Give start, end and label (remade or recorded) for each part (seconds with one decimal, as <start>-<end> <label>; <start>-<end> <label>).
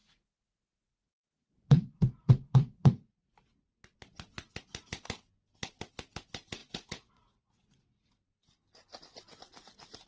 0.0-3.3 remade; 3.3-6.6 recorded; 6.6-8.1 remade; 8.1-10.1 recorded